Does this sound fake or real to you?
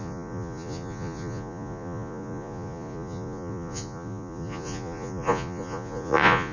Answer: fake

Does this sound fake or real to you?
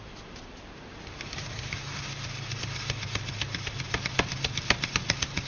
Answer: real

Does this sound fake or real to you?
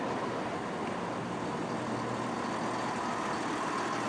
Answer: real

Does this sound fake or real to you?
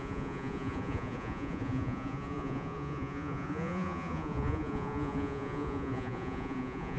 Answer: fake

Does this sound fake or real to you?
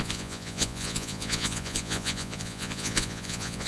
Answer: fake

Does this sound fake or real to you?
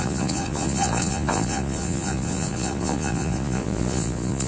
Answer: fake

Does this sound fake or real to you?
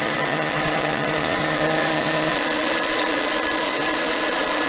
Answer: fake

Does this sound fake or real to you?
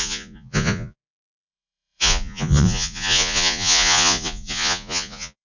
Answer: fake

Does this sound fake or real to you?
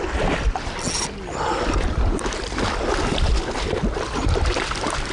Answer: real